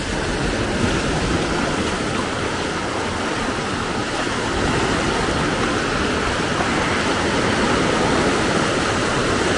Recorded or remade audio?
recorded